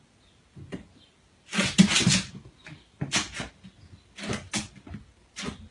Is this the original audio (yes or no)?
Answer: yes